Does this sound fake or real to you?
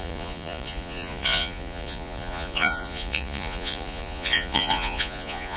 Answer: fake